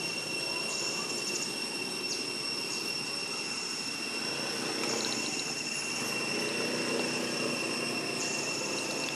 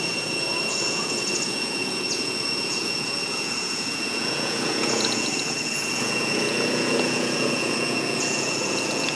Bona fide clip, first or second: first